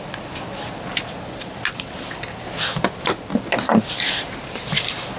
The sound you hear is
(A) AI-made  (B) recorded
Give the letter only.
B